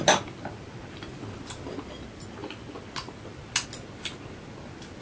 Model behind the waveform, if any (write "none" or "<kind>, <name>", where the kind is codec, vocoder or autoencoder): none